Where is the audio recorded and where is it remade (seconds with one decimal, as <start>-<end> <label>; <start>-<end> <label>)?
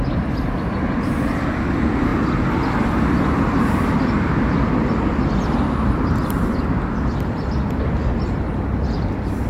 0.0-9.5 recorded